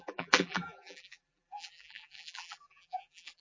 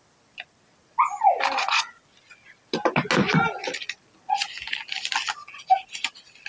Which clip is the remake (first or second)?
first